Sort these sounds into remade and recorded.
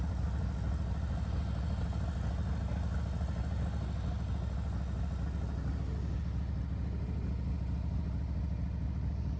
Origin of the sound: recorded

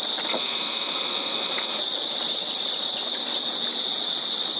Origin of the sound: recorded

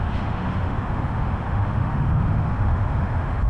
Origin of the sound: remade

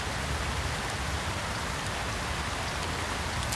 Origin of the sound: recorded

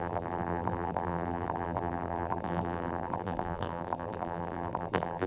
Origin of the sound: remade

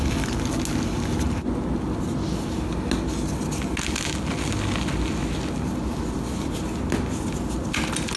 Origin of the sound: recorded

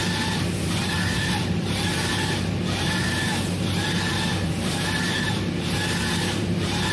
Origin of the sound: remade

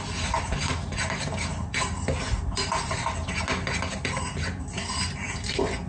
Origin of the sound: recorded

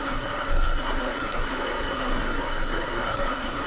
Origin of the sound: remade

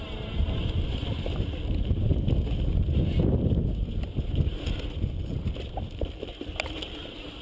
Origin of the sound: recorded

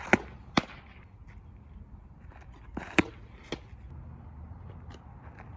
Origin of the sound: recorded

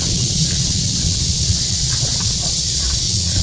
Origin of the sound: remade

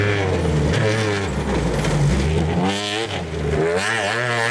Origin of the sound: recorded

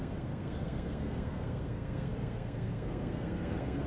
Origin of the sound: remade